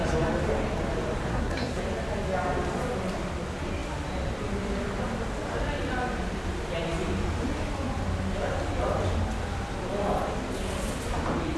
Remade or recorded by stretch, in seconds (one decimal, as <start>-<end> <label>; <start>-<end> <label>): 0.0-1.3 recorded; 1.3-1.8 remade; 1.8-11.6 recorded